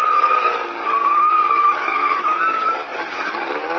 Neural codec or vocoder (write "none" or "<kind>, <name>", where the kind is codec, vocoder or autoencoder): codec, DAC